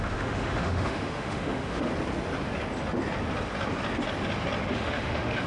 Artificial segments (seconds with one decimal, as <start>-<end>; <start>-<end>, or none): 0.0-1.9; 4.7-5.5